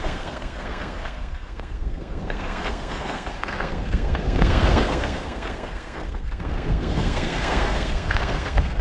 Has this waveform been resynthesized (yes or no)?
yes